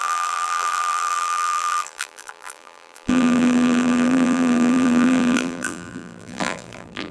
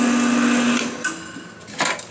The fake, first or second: first